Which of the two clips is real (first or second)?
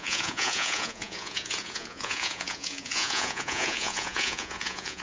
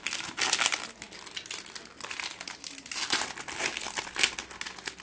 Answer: second